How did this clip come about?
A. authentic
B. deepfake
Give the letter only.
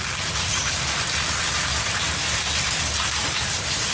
A